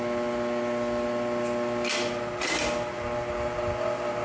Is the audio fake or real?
real